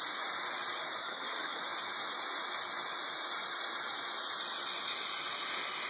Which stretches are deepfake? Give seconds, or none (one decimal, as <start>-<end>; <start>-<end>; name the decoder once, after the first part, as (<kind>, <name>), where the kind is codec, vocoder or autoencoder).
1.0-1.6 (vocoder, HiFi-GAN)